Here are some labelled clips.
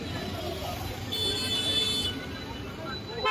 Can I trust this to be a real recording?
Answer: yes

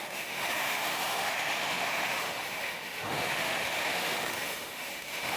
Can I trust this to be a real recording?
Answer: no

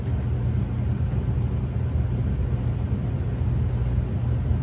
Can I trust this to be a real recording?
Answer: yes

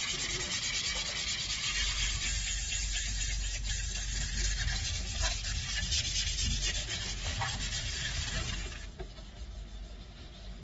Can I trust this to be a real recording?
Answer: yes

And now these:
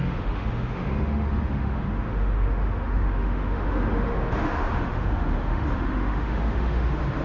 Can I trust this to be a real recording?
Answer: no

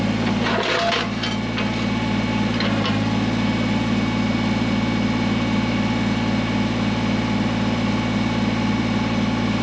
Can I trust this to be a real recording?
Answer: yes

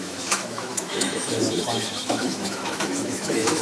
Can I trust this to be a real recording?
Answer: no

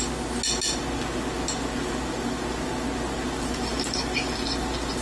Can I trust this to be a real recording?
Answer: yes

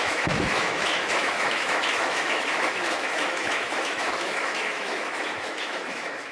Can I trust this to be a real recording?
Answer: no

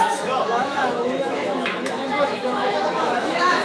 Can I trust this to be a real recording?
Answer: no